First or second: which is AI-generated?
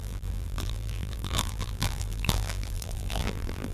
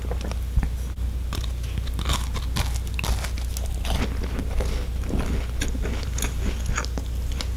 first